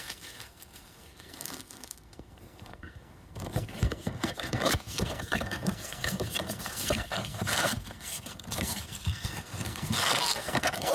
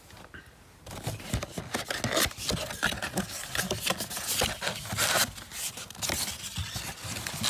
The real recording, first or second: second